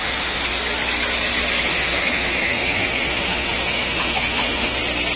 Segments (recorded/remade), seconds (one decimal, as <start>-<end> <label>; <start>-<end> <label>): 0.0-0.6 remade; 0.6-1.7 recorded; 1.7-4.8 remade; 4.8-5.2 recorded